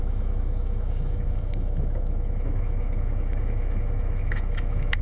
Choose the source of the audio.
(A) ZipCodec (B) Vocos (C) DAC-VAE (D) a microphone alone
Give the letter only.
C